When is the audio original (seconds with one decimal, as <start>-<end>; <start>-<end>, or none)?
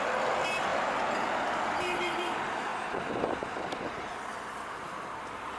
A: 0.7-1.6; 2.7-3.9